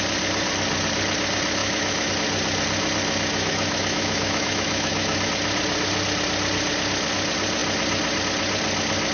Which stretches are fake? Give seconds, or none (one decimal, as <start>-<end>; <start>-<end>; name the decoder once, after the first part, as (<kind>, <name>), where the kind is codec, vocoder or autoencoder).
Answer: 1.6-2.1 (autoencoder, DAC-VAE); 3.3-5.3